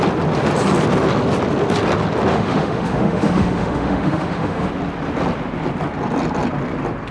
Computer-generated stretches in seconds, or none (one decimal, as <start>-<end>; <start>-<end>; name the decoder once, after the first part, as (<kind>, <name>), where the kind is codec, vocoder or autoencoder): 2.3-4.7 (autoencoder, DAC-VAE)